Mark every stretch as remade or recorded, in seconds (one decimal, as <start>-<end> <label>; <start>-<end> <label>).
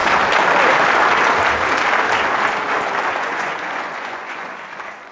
0.0-3.1 recorded; 3.1-5.1 remade